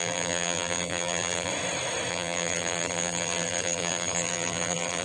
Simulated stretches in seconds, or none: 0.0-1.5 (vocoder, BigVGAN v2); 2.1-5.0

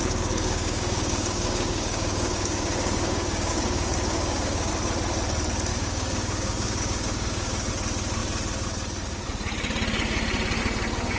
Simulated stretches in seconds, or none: 0.0-4.7 (codec, DAC); 5.7-7.7